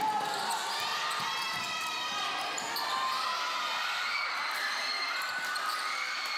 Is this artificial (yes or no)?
yes